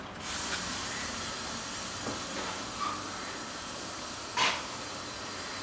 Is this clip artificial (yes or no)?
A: no